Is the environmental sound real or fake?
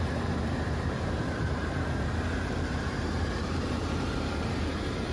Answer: fake